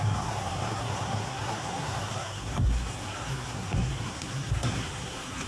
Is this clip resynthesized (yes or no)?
yes